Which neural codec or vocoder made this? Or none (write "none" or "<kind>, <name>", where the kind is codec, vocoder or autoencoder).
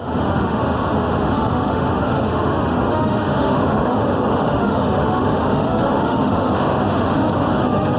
autoencoder, DAC-VAE